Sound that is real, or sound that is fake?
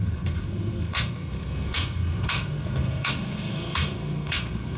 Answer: fake